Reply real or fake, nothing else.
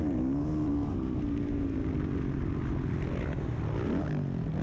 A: real